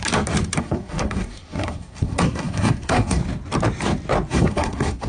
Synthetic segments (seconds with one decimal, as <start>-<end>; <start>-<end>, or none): 0.6-3.2; 4.3-5.1